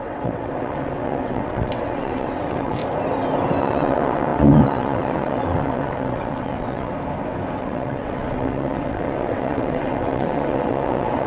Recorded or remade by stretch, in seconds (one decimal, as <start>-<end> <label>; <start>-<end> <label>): 0.0-2.8 remade; 2.8-3.6 recorded; 3.6-6.9 remade; 6.9-7.6 recorded; 7.6-11.3 remade